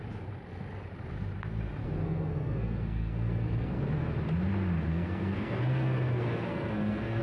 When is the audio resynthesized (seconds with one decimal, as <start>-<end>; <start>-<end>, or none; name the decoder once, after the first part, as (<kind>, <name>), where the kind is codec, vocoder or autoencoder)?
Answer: 1.8-3.8 (codec, SNAC); 4.9-7.2